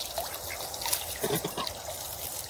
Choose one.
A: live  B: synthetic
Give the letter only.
A